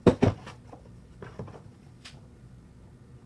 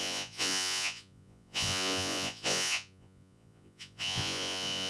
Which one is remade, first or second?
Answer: second